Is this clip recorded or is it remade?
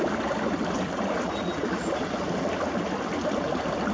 recorded